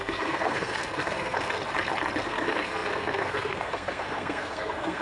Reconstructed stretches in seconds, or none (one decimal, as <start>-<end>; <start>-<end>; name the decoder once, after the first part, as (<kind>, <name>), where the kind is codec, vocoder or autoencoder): 0.0-1.6 (codec, SNAC); 2.2-5.0